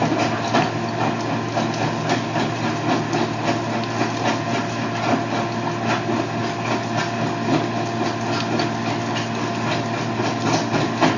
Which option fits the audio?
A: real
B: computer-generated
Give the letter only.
A